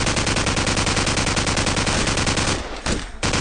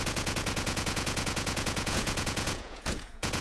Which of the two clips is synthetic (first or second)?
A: second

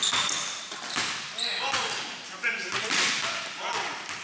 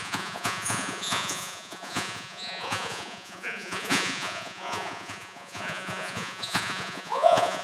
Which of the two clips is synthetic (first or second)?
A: second